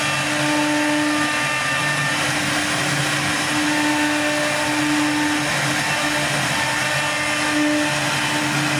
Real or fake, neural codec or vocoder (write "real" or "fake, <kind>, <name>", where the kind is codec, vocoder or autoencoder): real